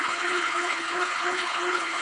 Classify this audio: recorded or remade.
remade